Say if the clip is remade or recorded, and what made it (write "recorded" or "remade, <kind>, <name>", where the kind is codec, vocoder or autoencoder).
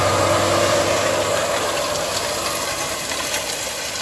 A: recorded